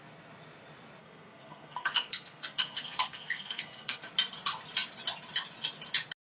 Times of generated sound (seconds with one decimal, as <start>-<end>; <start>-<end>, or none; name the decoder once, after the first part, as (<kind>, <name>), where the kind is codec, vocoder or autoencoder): 1.0-4.0 (codec, SNAC)